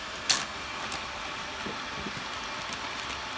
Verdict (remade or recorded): recorded